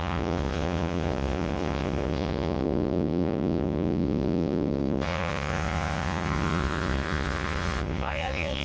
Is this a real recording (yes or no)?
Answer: no